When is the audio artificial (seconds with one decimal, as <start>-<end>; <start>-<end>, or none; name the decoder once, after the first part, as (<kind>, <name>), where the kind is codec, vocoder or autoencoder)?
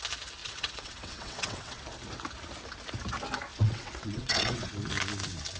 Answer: 0.4-1.8 (vocoder, WaveNeXt); 3.5-4.7